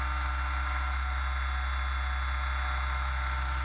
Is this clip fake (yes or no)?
no